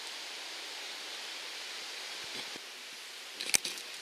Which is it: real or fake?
real